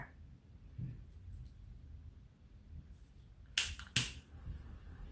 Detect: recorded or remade recorded